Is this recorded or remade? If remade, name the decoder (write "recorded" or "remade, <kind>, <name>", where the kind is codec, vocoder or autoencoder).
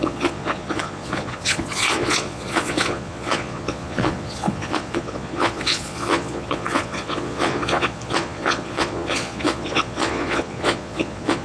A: remade, vocoder, Vocos